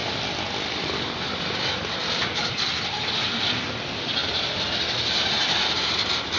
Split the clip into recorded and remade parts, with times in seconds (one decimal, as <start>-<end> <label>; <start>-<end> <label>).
0.0-6.4 recorded